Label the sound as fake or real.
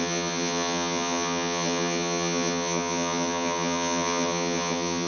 fake